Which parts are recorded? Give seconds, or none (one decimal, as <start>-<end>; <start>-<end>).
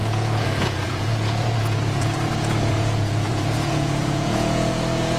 none